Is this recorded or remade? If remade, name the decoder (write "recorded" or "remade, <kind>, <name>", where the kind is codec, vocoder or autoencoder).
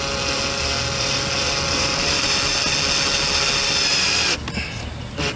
recorded